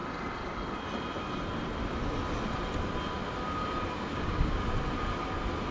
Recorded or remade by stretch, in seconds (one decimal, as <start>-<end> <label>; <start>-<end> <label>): 0.0-4.1 recorded; 4.1-4.6 remade; 4.6-5.7 recorded